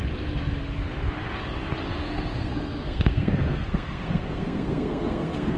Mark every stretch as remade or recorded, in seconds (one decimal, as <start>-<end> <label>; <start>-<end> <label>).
0.0-2.0 recorded; 2.0-5.6 remade